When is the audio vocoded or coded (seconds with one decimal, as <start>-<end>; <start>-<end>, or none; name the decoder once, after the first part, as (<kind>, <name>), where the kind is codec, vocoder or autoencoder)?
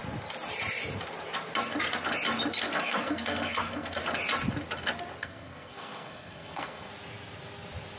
2.7-4.0 (codec, SNAC); 5.2-6.9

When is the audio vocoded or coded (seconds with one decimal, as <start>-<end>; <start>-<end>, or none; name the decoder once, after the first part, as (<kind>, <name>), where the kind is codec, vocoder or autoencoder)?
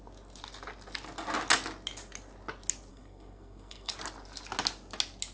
2.9-3.9 (codec, SNAC)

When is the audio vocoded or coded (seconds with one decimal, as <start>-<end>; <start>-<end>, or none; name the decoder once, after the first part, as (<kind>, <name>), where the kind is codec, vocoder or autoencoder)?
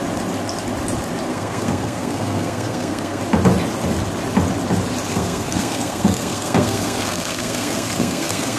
1.3-3.2 (codec, SNAC); 5.1-8.6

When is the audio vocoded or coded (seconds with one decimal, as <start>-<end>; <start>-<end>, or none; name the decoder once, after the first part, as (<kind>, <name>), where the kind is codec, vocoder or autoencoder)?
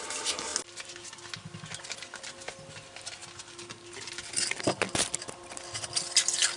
none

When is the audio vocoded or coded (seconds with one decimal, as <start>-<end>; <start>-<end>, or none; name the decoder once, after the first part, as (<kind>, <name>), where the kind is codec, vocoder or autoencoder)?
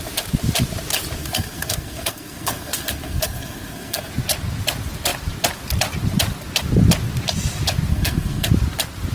1.2-4.1 (codec, SNAC); 7.9-8.5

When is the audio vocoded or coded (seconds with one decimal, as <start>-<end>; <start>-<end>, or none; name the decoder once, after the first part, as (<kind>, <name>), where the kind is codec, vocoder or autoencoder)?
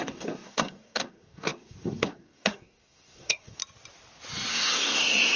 0.0-3.6 (codec, SNAC); 4.5-5.4